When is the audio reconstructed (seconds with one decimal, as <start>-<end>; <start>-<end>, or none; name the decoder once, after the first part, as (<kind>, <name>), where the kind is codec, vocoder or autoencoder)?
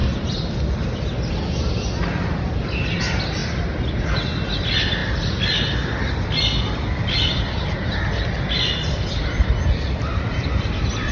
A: none